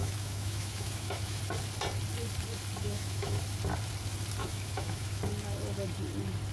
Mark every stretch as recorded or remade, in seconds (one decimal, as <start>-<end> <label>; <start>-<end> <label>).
0.0-1.4 remade; 1.4-2.8 recorded; 2.8-3.4 remade; 3.4-4.4 recorded; 4.4-5.2 remade; 5.2-6.5 recorded